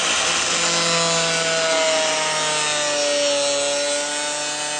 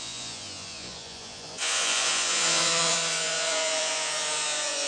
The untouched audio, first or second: first